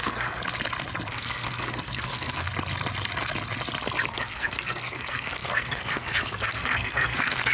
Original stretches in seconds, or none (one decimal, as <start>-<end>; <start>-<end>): 0.4-1.1; 2.5-4.1